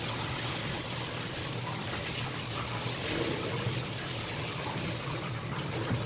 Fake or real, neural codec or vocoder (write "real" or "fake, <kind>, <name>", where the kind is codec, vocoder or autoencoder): real